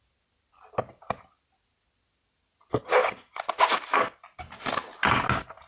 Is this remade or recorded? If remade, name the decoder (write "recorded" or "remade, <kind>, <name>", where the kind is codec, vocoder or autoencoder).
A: recorded